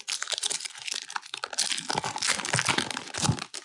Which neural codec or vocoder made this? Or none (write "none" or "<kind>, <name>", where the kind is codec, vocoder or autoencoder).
none